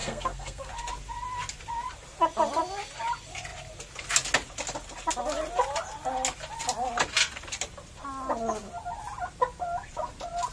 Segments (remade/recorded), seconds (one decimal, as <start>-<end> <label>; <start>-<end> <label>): 0.0-0.7 remade; 0.7-10.5 recorded